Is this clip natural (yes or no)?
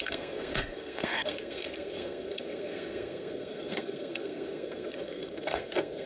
no